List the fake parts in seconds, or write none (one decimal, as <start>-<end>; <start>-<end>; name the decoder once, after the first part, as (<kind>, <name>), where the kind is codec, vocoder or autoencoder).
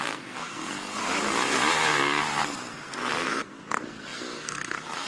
0.0-1.0 (codec, SNAC); 2.4-5.1